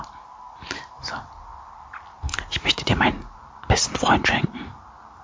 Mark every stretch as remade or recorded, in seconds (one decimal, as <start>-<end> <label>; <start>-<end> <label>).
0.0-5.2 recorded